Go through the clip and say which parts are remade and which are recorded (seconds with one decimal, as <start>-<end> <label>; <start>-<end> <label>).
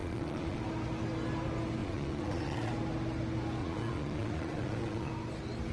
0.0-0.6 remade; 0.6-1.8 recorded; 1.8-2.7 remade; 2.7-3.6 recorded; 3.6-5.1 remade; 5.1-5.7 recorded